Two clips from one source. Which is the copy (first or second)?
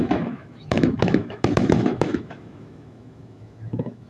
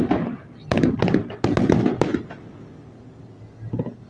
first